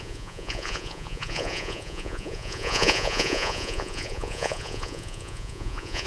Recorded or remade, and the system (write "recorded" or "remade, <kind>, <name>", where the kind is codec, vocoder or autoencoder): remade, vocoder, Vocos